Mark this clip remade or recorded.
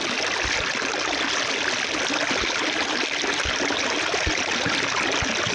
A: recorded